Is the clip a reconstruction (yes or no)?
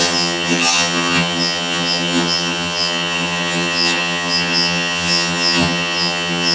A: yes